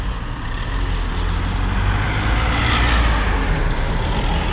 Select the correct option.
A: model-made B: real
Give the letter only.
B